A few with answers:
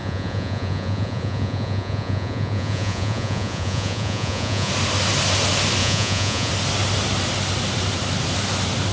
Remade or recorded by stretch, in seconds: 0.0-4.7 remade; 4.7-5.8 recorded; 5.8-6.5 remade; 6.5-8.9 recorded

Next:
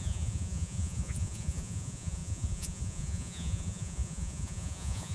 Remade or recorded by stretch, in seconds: 0.0-5.1 remade

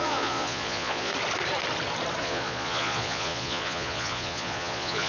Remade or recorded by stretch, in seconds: 0.0-1.1 remade; 1.1-2.2 recorded; 2.2-5.1 remade

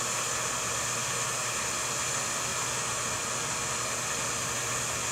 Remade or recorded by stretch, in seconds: 0.0-5.1 recorded

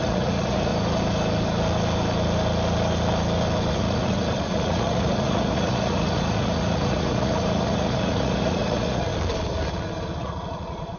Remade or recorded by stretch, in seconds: 0.0-0.7 remade; 0.7-3.7 recorded; 3.7-9.1 remade; 9.1-10.2 recorded; 10.2-11.0 remade